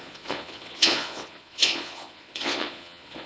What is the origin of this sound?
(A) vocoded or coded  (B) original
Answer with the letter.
A